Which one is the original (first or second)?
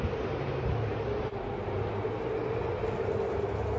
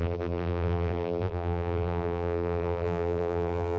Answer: first